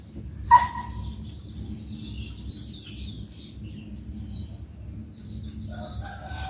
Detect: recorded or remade recorded